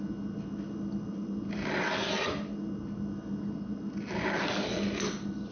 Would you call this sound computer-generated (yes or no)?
no